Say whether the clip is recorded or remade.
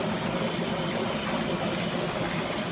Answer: recorded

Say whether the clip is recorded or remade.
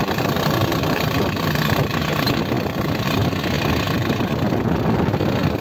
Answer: recorded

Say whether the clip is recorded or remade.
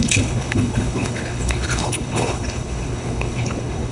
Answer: remade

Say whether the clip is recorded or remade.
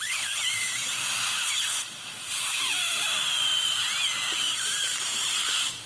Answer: remade